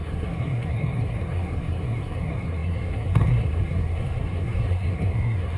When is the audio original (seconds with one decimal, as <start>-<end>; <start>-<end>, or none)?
none